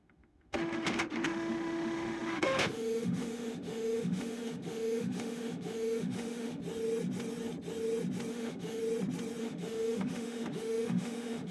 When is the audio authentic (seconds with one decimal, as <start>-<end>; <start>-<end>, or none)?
6.6-8.3; 8.8-9.4